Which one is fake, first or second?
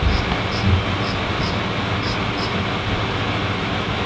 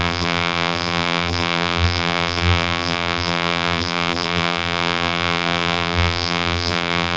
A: second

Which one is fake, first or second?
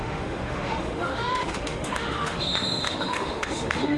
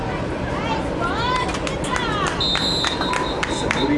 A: first